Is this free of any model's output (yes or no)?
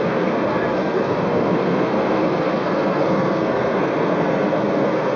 no